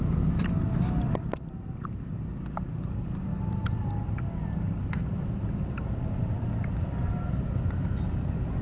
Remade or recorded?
recorded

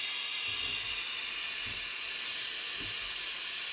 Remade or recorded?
recorded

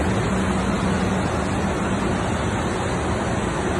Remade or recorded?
recorded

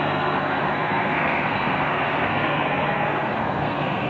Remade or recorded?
remade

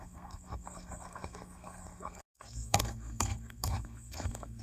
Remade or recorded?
remade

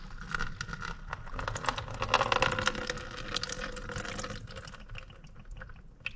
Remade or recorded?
recorded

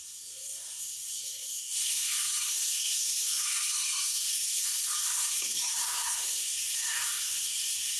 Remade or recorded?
remade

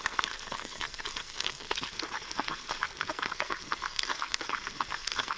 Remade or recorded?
remade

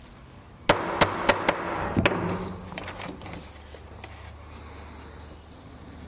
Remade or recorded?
recorded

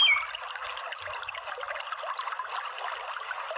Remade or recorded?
recorded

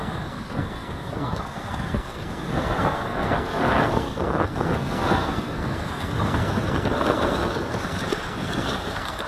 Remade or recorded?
remade